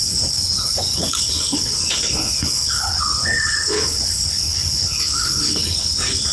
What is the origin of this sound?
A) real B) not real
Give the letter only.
B